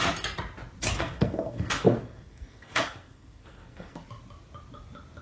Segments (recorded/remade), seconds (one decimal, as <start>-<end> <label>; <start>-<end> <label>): 0.0-0.9 recorded; 0.9-4.0 remade; 4.0-5.2 recorded